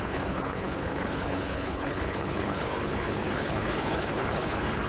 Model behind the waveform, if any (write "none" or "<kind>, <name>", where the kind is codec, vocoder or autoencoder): codec, HILCodec